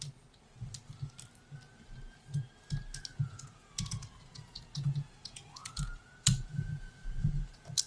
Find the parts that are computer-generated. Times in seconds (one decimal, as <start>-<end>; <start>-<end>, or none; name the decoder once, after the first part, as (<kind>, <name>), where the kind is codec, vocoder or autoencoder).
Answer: 3.1-7.9 (vocoder, Vocos)